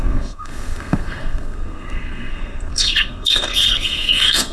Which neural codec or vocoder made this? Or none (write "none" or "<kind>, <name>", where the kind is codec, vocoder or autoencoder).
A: codec, SNAC